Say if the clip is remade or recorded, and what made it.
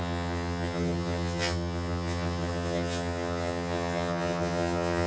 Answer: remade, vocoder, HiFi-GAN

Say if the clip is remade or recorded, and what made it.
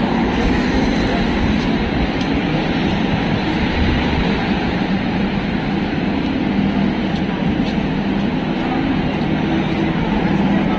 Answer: recorded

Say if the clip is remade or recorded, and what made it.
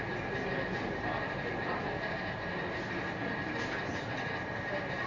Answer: recorded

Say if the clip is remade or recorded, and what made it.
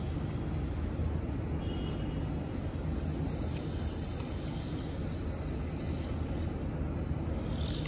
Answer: recorded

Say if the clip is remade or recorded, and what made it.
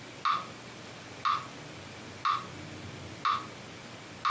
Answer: recorded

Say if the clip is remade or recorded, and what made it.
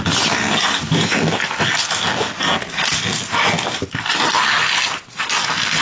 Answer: recorded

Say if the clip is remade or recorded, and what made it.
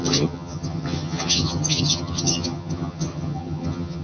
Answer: remade, vocoder, HiFi-GAN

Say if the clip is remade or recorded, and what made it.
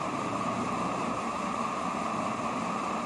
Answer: recorded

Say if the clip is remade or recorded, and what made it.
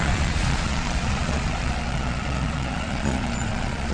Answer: remade, vocoder, Vocos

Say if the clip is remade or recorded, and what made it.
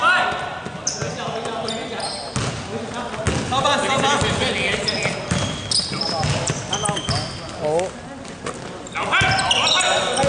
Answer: recorded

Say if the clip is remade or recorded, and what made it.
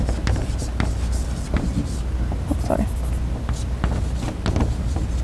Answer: recorded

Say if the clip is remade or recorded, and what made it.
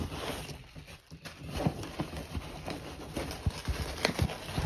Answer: recorded